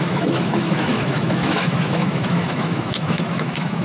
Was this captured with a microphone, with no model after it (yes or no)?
no